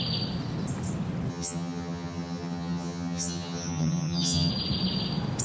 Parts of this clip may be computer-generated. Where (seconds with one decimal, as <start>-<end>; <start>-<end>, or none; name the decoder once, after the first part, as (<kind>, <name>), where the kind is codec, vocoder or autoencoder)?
1.3-4.5 (vocoder, HiFi-GAN)

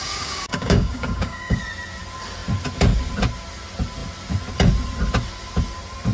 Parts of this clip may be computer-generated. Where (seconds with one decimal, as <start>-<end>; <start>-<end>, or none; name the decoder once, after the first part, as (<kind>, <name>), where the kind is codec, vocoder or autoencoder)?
0.0-1.6 (codec, DAC)

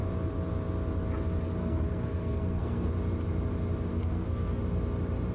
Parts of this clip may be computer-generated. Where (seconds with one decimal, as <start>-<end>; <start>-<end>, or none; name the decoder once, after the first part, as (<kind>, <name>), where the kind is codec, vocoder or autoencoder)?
1.6-2.9 (codec, SNAC); 3.9-4.6

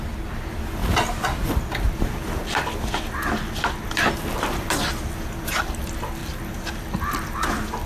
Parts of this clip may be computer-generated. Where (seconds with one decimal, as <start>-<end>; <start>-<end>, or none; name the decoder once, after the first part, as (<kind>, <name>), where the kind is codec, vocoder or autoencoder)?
6.2-7.3 (vocoder, BigVGAN v2)

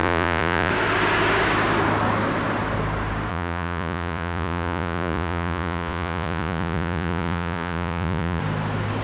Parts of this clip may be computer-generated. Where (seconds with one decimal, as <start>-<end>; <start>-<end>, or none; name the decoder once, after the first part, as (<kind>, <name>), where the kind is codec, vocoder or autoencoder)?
0.0-0.7 (vocoder, Vocos); 3.3-8.4

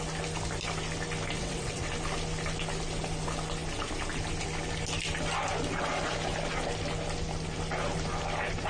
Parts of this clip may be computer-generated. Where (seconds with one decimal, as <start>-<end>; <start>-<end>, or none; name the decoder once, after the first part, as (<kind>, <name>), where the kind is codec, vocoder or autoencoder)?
1.4-1.9 (vocoder, WaveNeXt)

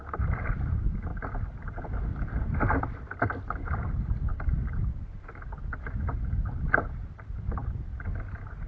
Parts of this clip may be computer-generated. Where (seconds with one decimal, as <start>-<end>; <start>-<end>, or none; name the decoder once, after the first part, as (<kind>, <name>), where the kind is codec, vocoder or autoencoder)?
4.3-5.0 (vocoder, BigVGAN v2)